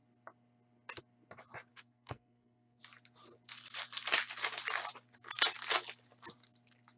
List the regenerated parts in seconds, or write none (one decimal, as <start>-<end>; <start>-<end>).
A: 1.7-2.8